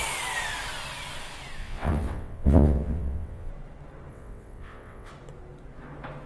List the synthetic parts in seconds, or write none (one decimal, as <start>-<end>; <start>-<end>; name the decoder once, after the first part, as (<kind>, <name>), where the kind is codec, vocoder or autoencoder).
1.6-3.5 (vocoder, WaveNeXt); 4.1-5.1